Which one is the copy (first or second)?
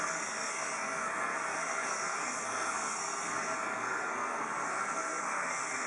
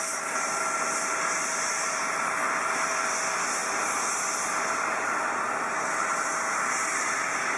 first